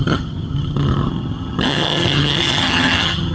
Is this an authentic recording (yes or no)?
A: no